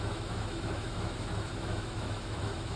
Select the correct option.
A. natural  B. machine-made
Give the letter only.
B